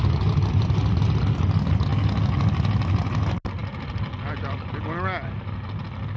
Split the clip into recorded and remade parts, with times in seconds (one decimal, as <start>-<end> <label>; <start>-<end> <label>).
0.0-6.2 recorded